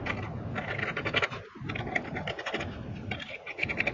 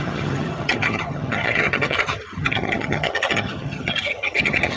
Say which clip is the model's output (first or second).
second